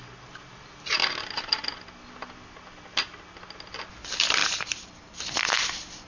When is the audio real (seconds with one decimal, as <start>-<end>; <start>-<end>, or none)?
0.0-4.4; 5.2-6.1